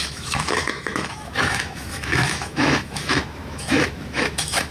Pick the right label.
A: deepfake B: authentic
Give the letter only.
A